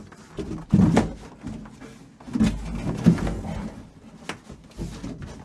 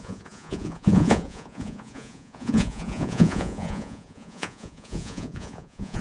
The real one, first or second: first